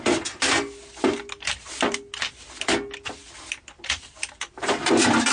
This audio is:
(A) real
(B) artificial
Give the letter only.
A